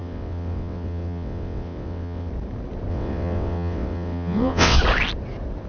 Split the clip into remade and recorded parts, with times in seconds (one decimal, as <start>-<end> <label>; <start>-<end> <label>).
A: 0.0-2.3 remade; 2.3-2.9 recorded; 2.9-4.8 remade; 4.8-5.7 recorded